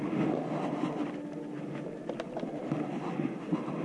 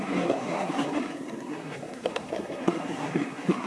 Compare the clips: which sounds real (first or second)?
first